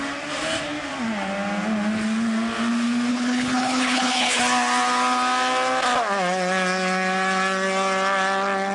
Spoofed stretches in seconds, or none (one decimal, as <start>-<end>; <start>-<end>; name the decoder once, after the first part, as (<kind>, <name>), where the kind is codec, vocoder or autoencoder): 3.1-4.4 (codec, HILCodec)